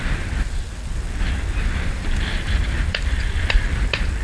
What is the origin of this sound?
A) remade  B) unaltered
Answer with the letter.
A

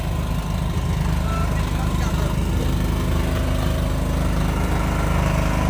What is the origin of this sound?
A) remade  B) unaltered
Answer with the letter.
B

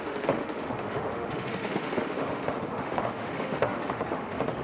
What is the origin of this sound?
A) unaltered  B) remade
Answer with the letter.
B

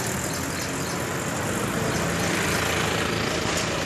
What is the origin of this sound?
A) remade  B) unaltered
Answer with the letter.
A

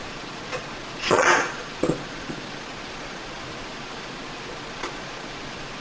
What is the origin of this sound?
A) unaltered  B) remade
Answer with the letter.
B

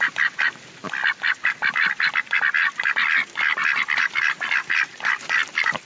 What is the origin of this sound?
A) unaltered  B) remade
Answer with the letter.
A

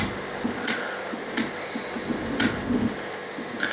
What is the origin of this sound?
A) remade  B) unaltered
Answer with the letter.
B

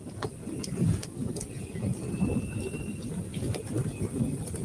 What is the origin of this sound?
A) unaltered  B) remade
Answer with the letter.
A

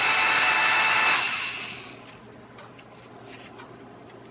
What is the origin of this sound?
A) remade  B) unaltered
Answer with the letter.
B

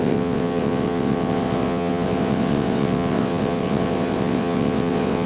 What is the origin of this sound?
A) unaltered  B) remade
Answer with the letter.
B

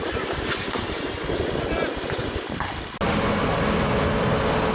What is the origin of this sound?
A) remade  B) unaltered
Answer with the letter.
B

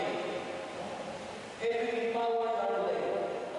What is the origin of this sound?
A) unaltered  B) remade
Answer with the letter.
A